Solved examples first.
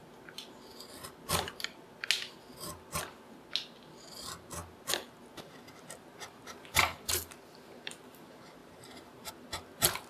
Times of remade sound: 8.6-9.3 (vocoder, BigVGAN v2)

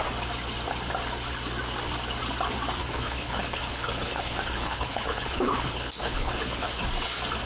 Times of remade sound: 2.8-6.8 (codec, HILCodec)

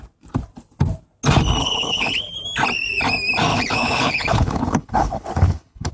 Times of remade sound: 1.6-2.3 (codec, HILCodec); 3.5-5.9

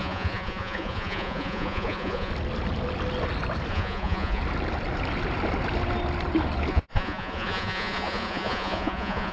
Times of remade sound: 0.0-2.3 (vocoder, Vocos); 3.7-4.4; 6.7-9.3

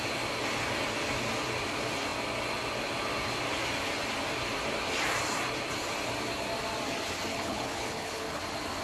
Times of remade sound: 7.3-8.4 (codec, HILCodec)

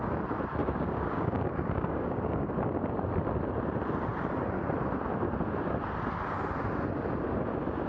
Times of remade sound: 0.6-2.5 (codec, DAC)

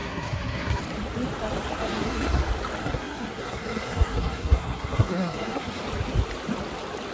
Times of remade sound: 0.0-0.8 (codec, SNAC); 1.8-2.4; 2.8-5.8